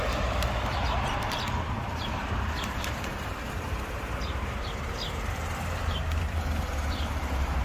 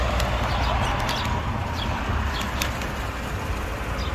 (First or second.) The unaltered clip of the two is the second